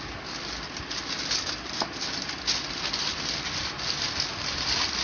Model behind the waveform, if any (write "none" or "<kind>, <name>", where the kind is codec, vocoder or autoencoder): none